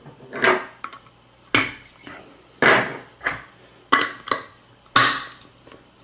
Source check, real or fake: real